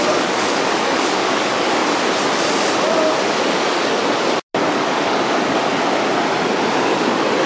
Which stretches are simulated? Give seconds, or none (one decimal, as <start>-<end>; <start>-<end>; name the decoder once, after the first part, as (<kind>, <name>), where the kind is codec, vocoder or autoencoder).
0.0-1.8 (codec, DAC); 3.6-4.0; 4.7-5.7; 6.8-7.5